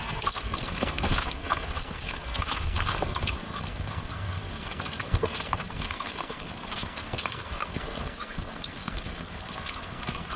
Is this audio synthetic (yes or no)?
yes